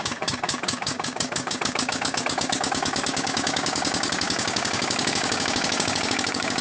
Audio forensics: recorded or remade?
remade